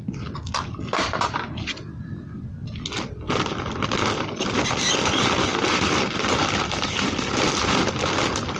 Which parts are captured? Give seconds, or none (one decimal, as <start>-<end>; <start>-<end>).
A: 0.0-8.6